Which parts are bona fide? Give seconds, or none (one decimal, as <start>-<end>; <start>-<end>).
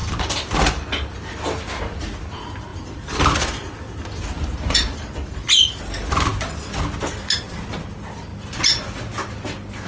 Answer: 0.5-2.7; 5.8-9.9